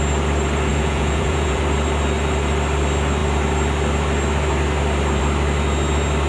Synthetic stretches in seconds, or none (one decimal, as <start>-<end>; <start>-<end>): 0.7-1.6